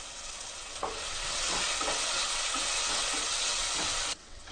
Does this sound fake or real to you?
fake